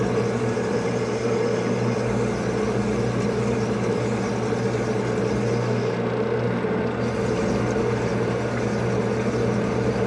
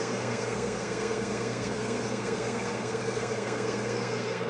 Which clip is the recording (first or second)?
first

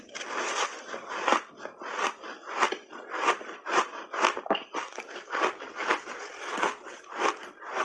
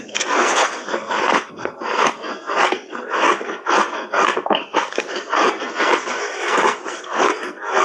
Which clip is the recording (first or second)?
first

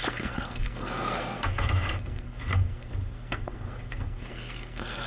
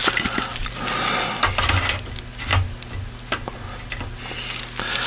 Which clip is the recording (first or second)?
second